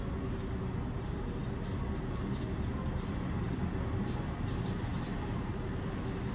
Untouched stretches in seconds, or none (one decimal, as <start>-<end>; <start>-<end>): 0.0-6.3